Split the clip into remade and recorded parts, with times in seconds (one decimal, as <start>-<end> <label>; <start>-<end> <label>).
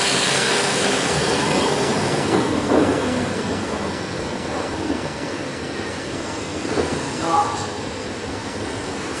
0.0-9.2 remade